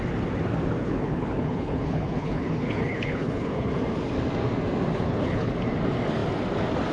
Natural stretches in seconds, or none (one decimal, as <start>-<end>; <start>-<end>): 0.0-0.8; 3.7-4.9; 5.5-6.9